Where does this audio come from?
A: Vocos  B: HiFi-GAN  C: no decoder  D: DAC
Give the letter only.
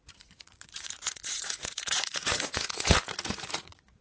A